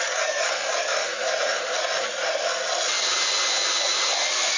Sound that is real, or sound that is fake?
real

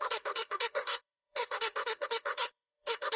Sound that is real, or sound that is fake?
fake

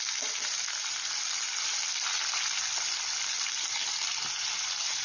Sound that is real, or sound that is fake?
real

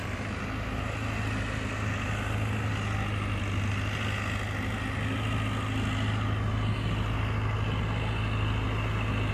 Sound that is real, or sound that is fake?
real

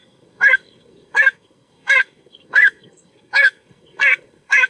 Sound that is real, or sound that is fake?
fake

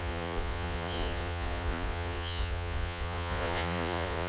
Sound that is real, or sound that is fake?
fake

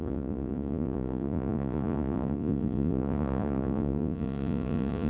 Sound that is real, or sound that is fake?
fake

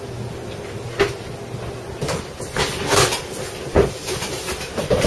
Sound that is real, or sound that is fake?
real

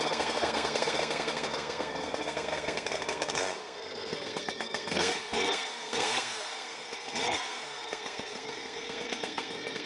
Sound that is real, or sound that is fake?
fake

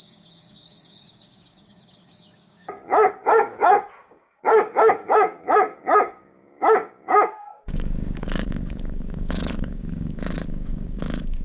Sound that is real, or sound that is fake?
fake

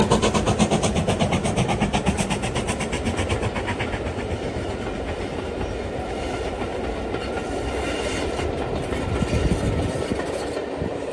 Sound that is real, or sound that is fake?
real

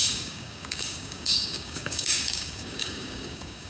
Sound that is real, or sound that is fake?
fake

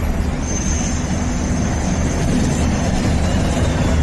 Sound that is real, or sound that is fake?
real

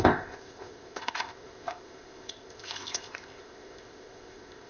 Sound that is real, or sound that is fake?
fake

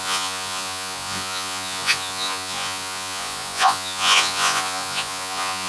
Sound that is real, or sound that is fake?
fake